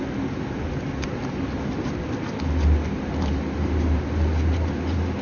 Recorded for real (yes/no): yes